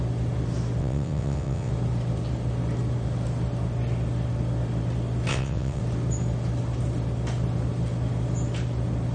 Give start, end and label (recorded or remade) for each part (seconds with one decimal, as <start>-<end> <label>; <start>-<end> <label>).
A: 0.0-0.8 recorded; 0.8-1.7 remade; 1.7-5.3 recorded; 5.3-5.8 remade; 5.8-9.1 recorded